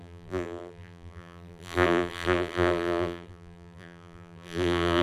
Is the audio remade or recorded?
remade